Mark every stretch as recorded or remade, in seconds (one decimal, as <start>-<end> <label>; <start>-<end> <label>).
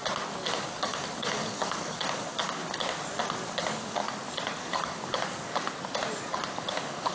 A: 0.0-0.5 recorded; 0.5-2.6 remade; 2.6-3.5 recorded; 3.5-4.0 remade; 4.0-4.6 recorded; 4.6-5.5 remade; 5.5-6.5 recorded; 6.5-7.1 remade